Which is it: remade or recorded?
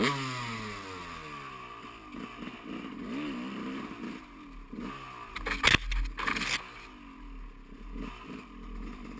recorded